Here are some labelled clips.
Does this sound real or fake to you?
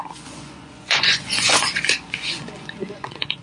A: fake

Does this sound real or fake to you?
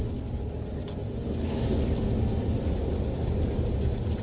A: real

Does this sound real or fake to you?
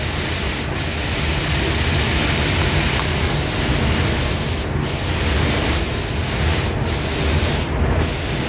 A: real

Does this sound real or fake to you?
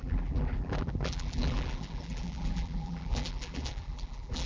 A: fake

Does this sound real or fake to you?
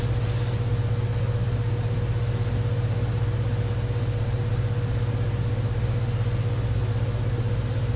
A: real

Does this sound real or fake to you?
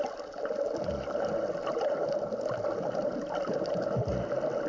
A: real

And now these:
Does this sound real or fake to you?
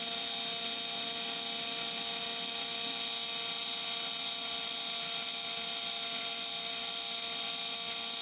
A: real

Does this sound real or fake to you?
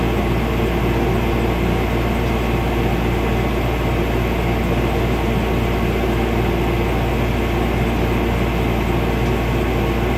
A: real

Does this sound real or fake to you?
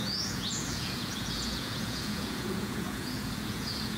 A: fake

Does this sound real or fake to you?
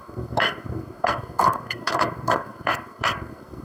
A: fake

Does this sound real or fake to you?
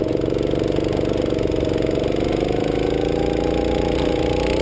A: real